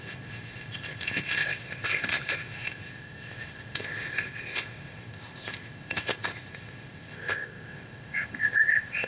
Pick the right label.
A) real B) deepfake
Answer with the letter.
B